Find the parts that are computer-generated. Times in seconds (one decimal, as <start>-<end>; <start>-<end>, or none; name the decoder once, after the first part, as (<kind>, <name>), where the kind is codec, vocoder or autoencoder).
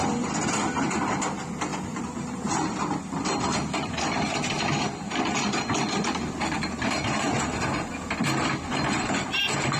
1.7-2.4 (vocoder, BigVGAN v2)